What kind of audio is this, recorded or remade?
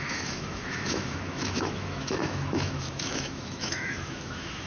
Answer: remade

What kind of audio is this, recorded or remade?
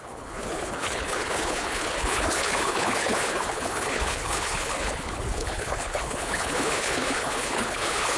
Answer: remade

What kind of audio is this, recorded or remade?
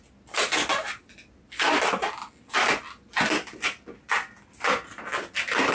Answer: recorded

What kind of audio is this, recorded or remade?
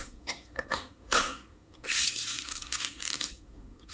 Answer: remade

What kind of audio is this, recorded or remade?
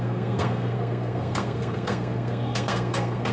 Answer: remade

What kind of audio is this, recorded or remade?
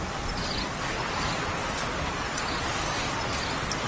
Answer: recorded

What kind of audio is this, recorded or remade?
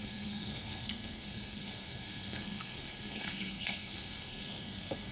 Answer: remade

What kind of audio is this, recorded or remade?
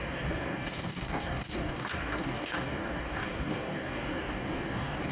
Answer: remade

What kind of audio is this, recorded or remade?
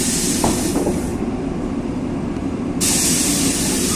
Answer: remade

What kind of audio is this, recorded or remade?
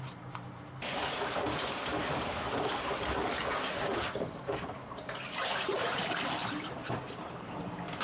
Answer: remade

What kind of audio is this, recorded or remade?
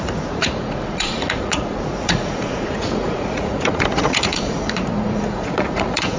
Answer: remade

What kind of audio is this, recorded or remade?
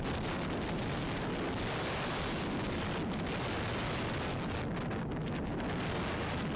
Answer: recorded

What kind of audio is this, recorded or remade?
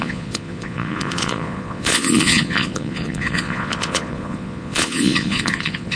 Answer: remade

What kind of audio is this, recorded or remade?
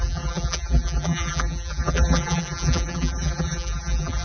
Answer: remade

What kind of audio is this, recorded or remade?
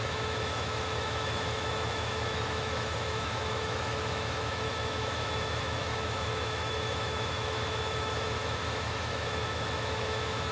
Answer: remade